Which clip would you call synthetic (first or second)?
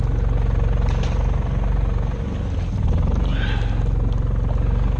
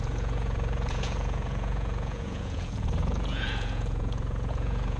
second